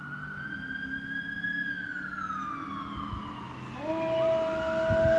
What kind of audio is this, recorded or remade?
recorded